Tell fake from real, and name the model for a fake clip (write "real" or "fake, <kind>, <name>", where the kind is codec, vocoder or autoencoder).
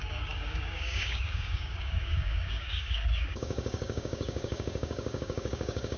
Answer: fake, codec, DAC